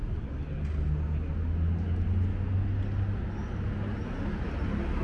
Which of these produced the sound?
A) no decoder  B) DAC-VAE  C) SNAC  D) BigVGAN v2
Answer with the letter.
A